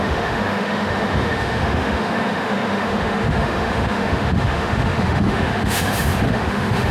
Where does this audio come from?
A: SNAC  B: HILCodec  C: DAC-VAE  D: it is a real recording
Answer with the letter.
C